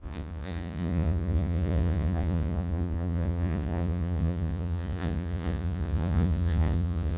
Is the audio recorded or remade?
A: remade